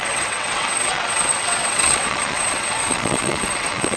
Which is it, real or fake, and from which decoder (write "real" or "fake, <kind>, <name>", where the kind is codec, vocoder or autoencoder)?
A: fake, vocoder, WaveNeXt